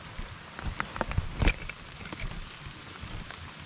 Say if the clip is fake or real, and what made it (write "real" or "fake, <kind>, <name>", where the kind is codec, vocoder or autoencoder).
fake, vocoder, BigVGAN v2